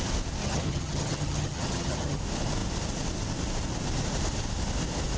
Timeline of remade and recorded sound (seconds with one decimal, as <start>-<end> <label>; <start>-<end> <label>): 0.0-0.4 recorded; 0.4-2.2 remade; 2.2-5.2 recorded